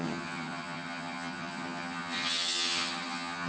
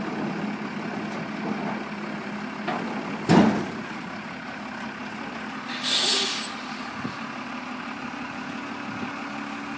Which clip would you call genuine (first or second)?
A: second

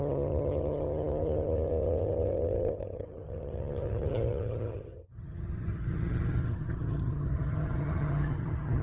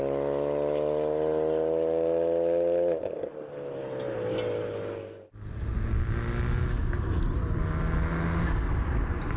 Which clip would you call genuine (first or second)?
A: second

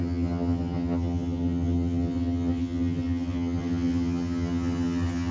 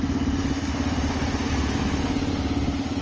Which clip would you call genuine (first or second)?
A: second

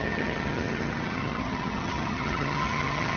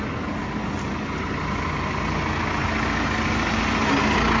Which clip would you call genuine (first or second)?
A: second